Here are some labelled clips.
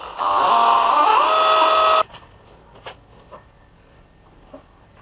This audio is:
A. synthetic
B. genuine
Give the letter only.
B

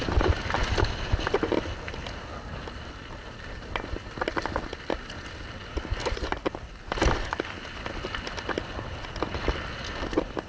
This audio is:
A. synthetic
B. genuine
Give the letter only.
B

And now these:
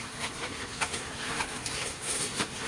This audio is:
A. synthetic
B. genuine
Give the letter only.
A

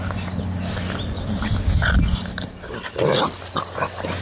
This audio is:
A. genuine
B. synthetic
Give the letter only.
A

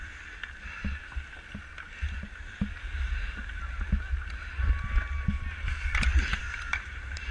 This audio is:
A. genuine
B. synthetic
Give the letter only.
A